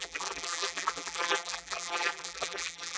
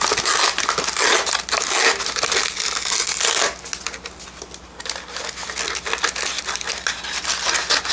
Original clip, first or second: second